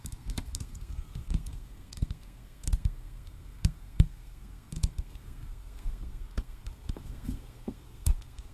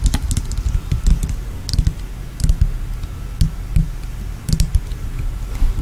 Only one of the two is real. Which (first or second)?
second